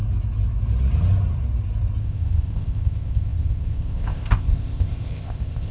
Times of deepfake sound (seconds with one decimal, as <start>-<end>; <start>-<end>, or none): 2.0-5.7